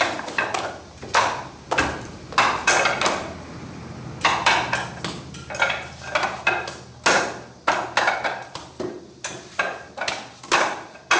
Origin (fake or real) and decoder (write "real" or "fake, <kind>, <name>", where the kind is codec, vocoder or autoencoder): real